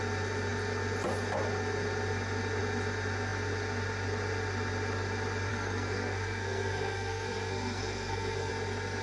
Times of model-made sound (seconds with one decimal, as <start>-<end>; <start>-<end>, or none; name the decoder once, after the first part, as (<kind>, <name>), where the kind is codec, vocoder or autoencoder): 5.5-8.5 (codec, SNAC)